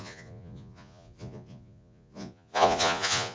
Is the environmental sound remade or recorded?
remade